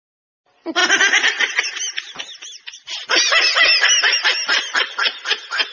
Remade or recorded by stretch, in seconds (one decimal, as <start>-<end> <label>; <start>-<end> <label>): 0.0-5.7 recorded

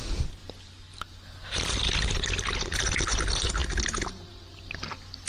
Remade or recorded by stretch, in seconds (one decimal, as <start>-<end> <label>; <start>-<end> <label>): 0.0-5.3 recorded

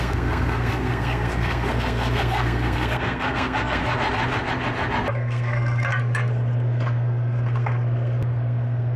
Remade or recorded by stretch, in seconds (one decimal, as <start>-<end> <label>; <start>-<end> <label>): 0.0-3.8 remade; 3.8-5.1 recorded; 5.1-9.0 remade

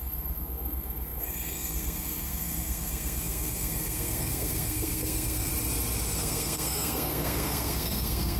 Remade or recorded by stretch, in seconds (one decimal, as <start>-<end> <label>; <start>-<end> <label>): 0.0-5.5 remade; 5.5-6.2 recorded; 6.2-8.4 remade

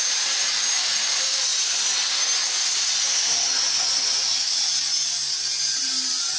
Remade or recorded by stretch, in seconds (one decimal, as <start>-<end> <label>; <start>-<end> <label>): 0.0-1.5 remade; 1.5-4.1 recorded; 4.1-6.4 remade

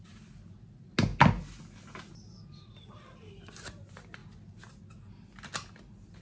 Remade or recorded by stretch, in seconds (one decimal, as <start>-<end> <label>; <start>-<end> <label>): 0.0-6.2 recorded